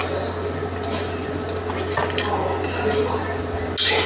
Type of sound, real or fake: real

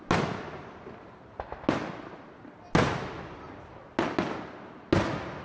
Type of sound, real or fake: real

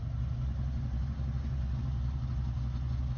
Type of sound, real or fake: real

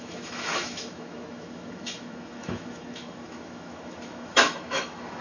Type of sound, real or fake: fake